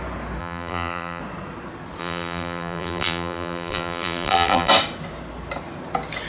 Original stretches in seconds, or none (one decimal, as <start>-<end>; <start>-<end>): 0.0-0.4; 1.2-2.0; 4.7-6.3